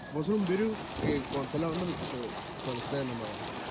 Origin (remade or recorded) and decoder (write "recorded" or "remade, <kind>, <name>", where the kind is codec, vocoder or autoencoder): recorded